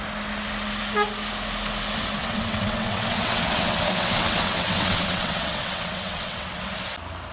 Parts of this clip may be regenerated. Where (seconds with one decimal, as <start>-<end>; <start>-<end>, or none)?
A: 2.2-6.6